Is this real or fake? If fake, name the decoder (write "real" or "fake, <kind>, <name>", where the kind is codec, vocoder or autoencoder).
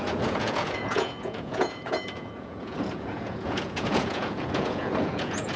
fake, vocoder, Vocos